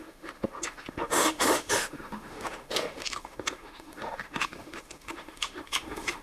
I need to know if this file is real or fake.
fake